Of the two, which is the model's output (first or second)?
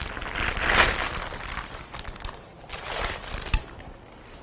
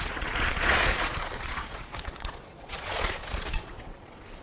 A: second